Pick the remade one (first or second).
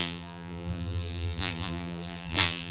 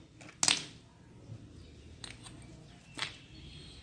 first